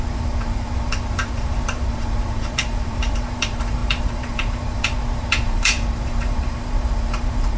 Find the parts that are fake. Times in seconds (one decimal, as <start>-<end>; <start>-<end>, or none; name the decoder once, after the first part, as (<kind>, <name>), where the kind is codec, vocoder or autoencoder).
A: 0.0-7.6 (vocoder, BigVGAN v2)